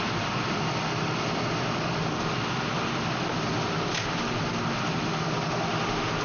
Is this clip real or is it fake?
real